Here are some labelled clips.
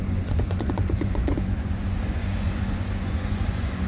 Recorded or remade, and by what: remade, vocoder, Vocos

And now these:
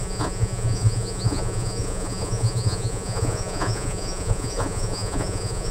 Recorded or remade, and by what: remade, vocoder, Vocos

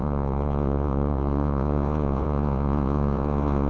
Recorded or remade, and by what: remade, vocoder, Vocos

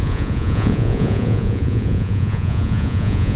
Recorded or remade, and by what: remade, vocoder, Vocos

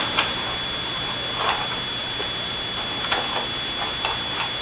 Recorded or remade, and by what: recorded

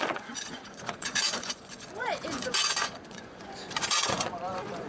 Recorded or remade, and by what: remade, vocoder, Vocos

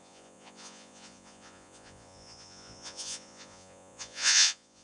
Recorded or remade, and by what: remade, vocoder, Vocos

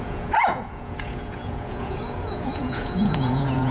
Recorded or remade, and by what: remade, vocoder, Vocos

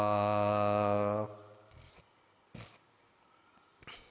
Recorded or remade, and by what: recorded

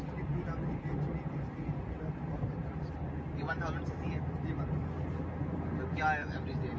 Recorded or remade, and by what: recorded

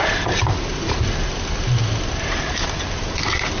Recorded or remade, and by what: recorded